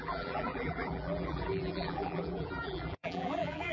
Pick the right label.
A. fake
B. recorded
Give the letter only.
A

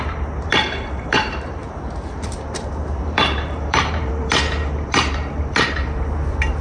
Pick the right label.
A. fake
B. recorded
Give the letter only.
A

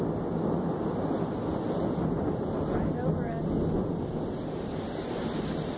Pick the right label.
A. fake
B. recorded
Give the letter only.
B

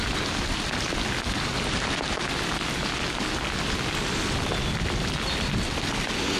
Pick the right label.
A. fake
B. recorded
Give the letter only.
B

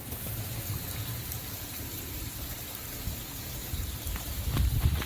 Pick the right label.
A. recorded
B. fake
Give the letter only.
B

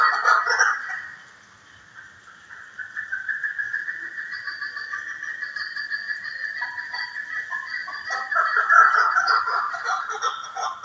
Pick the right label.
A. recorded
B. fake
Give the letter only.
B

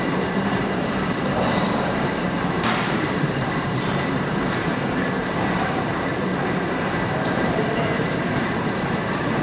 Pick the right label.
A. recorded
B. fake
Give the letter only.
B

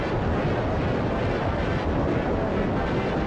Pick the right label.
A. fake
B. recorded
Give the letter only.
B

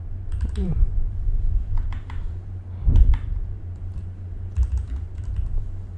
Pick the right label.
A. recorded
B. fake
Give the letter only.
B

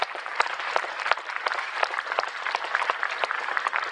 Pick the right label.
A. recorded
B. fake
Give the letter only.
B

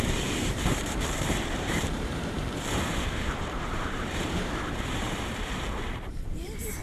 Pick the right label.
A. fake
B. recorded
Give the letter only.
A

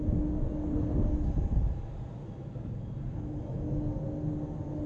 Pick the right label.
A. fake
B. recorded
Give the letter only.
B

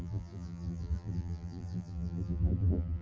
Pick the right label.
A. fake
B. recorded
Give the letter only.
A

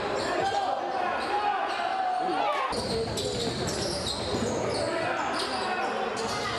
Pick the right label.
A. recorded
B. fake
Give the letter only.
A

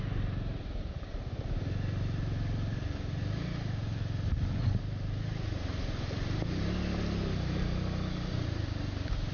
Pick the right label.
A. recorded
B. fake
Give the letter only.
A